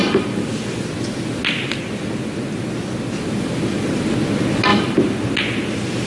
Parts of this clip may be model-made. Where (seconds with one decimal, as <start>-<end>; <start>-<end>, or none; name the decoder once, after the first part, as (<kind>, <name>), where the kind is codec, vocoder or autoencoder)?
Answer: none